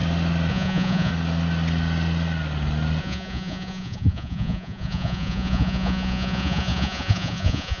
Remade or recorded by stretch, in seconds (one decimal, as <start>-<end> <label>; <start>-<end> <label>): 0.0-0.5 recorded; 0.5-1.1 remade; 1.1-3.0 recorded; 3.0-7.8 remade